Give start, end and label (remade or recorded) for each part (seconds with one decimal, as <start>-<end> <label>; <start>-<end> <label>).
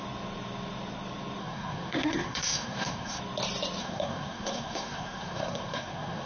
0.0-1.4 recorded; 1.4-3.2 remade; 3.2-3.8 recorded; 3.8-6.3 remade